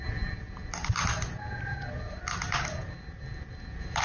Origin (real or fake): real